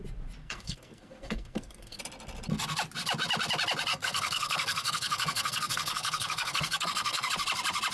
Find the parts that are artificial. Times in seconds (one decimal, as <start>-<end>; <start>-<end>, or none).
0.4-2.0; 3.9-7.3